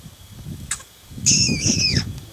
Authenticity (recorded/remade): remade